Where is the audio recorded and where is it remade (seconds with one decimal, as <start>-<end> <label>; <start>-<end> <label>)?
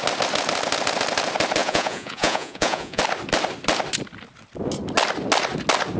0.0-1.6 recorded; 1.6-3.0 remade; 3.0-6.0 recorded